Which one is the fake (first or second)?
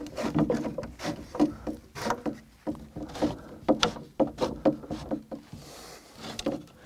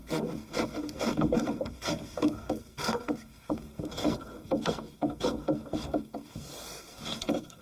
second